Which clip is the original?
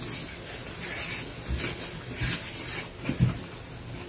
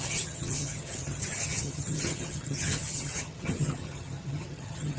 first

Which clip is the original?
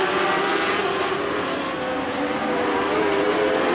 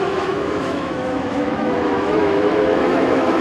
first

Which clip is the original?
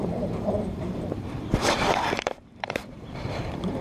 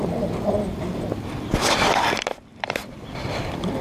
second